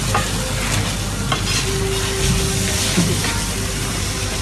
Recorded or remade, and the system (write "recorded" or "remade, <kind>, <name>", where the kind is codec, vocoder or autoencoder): recorded